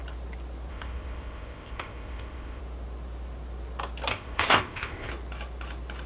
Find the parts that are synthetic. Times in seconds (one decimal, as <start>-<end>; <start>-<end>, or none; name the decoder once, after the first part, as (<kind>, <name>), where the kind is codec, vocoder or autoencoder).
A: 0.7-2.6 (codec, ZipCodec); 4.1-5.1